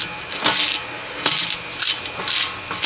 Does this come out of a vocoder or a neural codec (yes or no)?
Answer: no